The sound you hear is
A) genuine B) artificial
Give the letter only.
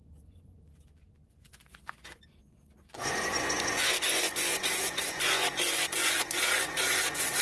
B